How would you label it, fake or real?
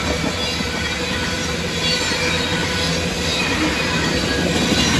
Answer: real